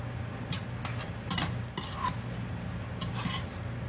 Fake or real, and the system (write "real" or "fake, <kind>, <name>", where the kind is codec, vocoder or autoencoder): real